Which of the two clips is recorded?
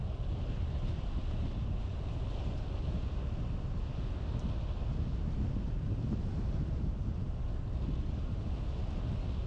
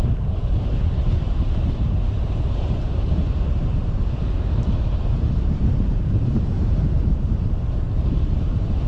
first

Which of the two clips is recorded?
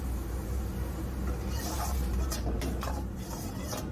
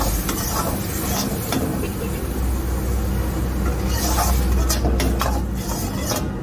second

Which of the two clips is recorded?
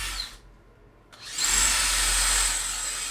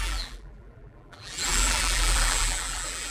first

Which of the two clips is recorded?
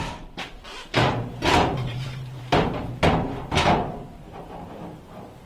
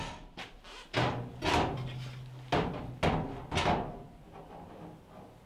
second